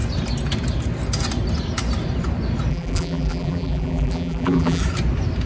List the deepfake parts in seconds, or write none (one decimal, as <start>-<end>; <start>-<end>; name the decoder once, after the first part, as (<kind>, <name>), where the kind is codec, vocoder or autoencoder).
2.7-4.8 (vocoder, BigVGAN v2)